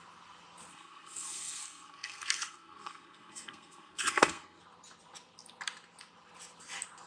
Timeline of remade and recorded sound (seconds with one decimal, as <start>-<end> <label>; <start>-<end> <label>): 0.0-0.7 recorded; 0.7-4.6 remade; 4.6-7.1 recorded

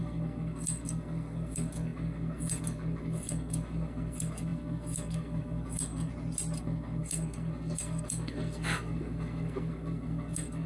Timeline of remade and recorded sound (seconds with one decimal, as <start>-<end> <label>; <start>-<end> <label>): 0.0-6.1 remade; 6.1-6.6 recorded; 6.6-10.7 remade

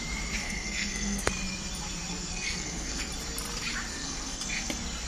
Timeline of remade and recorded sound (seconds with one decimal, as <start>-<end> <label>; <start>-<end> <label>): 0.0-0.4 recorded; 0.4-1.3 remade; 1.3-2.1 recorded; 2.1-3.1 remade; 3.1-3.9 recorded; 3.9-4.4 remade; 4.4-5.1 recorded

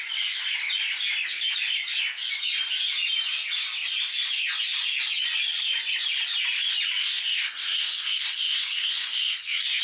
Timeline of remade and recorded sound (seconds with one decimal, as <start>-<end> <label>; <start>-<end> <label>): 0.0-7.0 recorded; 7.0-9.8 remade